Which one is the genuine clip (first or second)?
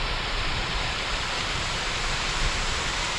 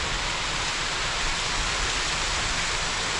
second